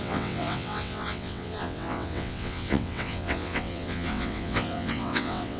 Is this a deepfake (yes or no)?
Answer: yes